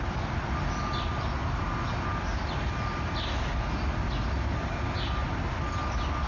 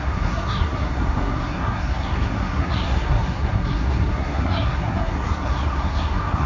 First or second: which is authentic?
first